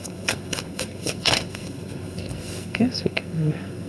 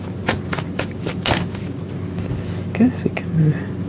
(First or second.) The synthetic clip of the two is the first